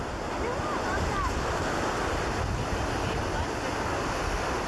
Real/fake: real